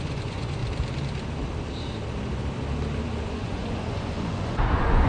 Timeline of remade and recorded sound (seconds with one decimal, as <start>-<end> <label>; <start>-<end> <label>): 0.0-0.6 remade; 0.6-3.3 recorded; 3.3-5.1 remade